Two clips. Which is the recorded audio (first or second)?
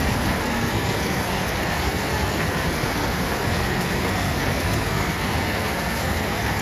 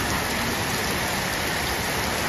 second